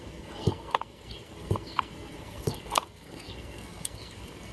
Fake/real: fake